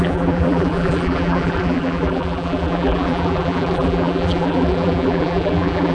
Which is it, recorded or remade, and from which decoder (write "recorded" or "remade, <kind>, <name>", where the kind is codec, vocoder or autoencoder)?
remade, vocoder, BigVGAN v2